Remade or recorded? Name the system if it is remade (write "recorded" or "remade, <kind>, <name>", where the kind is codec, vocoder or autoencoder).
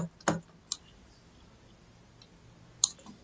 recorded